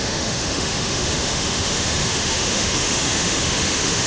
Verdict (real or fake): fake